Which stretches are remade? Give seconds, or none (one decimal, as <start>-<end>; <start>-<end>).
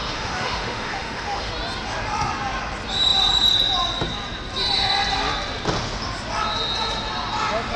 0.0-1.5